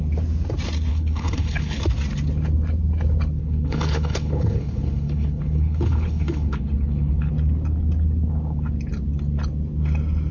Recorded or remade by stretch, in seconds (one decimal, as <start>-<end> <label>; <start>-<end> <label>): 0.0-0.9 recorded; 0.9-1.8 remade; 1.8-3.4 recorded; 3.4-7.3 remade; 7.3-10.3 recorded